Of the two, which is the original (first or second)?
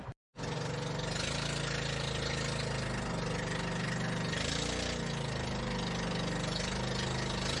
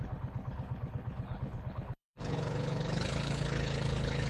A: first